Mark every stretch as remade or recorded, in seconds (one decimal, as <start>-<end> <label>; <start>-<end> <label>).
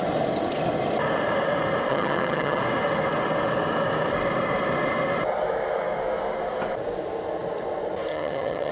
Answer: 0.0-1.9 recorded; 1.9-2.6 remade; 2.6-8.1 recorded; 8.1-8.7 remade